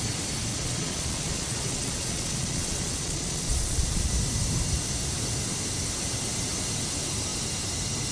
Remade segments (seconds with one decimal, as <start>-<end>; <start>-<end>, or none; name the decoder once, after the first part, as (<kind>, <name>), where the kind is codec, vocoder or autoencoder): 0.5-4.1 (vocoder, Vocos)